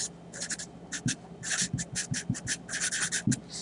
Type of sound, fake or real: real